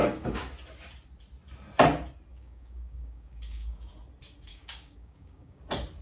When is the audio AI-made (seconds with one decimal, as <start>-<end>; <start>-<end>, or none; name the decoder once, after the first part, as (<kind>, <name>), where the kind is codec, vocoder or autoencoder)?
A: 0.0-0.5 (codec, DAC); 2.3-3.9; 4.5-5.6